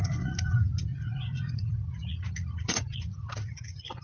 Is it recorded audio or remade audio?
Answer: remade